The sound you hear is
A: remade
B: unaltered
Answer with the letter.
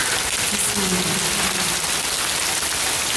B